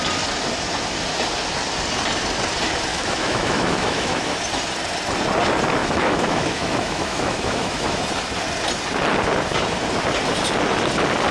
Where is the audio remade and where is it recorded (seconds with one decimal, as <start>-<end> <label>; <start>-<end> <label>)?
0.0-2.9 recorded; 2.9-4.4 remade; 4.4-5.8 recorded; 5.8-8.0 remade; 8.0-11.3 recorded